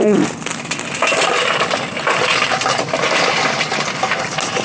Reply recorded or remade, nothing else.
recorded